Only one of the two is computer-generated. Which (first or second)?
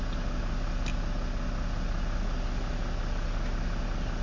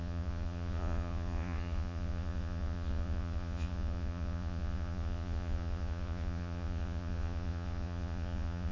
second